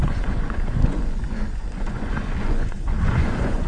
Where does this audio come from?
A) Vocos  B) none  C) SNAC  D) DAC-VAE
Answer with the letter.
A